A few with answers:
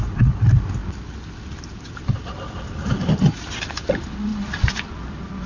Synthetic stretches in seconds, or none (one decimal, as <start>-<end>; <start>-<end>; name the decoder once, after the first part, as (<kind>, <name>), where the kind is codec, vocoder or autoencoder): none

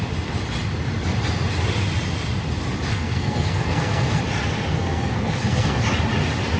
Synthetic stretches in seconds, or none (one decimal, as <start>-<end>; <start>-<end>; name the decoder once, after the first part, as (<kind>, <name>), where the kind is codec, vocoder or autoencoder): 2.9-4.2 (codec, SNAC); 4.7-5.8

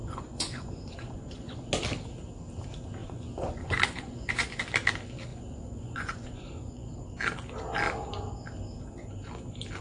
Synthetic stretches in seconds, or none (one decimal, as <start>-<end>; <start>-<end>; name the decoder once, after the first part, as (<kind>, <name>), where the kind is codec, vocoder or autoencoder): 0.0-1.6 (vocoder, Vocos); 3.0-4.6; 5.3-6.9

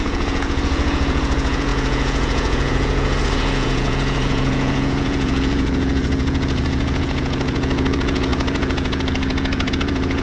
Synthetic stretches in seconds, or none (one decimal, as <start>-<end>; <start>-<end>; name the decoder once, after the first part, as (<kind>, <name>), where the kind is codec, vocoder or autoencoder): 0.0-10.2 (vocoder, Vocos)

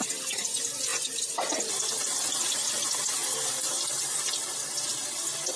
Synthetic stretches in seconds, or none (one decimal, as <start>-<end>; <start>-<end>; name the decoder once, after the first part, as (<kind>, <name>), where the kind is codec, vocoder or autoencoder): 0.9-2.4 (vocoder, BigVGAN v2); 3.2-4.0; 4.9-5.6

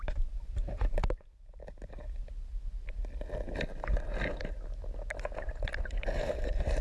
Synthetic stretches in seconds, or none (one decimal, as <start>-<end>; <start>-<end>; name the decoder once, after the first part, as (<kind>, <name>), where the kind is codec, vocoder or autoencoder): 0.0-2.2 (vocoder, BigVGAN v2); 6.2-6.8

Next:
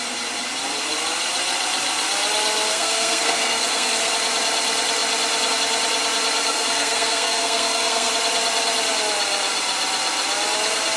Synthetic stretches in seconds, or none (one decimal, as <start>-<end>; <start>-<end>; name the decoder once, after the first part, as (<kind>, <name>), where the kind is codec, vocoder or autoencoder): 2.7-4.1 (codec, SNAC); 6.4-8.1

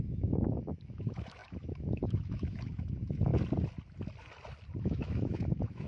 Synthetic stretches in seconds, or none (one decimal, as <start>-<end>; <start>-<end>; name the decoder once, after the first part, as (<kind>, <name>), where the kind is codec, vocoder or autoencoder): 0.0-3.3 (autoencoder, DAC-VAE); 4.8-5.9